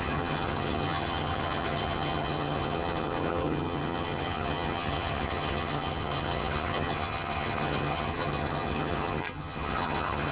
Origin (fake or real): fake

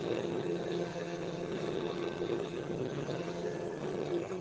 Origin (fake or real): fake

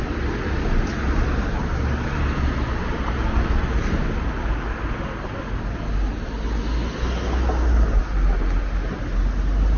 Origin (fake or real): real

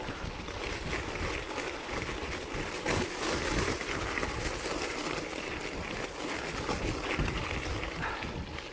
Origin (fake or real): real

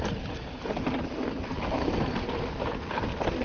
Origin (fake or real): real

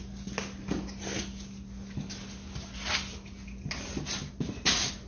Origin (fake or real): real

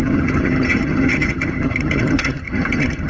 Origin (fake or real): fake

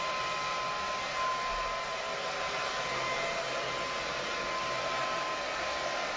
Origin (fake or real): real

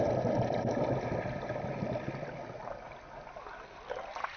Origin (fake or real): real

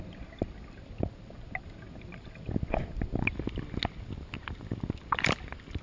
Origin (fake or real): real